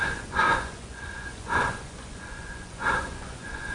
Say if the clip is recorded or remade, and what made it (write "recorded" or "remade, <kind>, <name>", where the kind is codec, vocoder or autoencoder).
remade, vocoder, Vocos